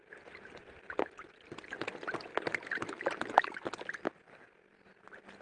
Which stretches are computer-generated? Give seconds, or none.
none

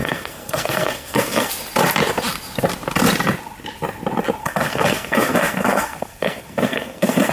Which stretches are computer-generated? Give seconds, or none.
0.0-1.5 (codec, SNAC); 4.4-7.3

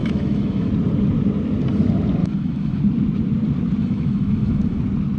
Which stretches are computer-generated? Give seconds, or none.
0.0-0.7 (autoencoder, DAC-VAE); 2.2-2.8; 3.8-4.8

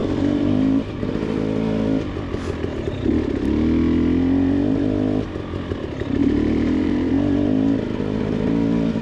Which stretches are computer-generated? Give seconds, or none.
0.0-1.1 (vocoder, BigVGAN v2); 6.2-7.1

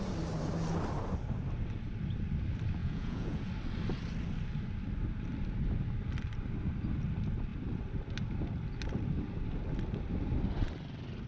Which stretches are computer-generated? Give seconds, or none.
2.8-3.5 (vocoder, Vocos)